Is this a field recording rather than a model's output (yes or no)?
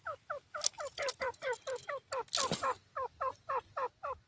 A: yes